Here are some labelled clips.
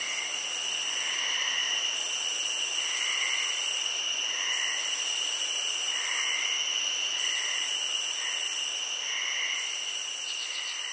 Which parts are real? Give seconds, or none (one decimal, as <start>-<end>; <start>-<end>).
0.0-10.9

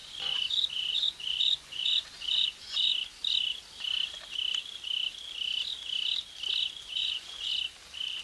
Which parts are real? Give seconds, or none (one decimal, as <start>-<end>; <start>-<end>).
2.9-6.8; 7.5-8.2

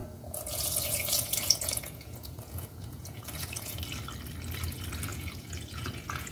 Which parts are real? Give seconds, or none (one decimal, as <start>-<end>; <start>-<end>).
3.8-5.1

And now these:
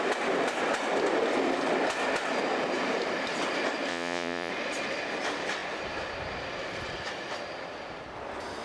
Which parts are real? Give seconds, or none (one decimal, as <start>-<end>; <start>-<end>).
0.0-3.9; 4.5-8.6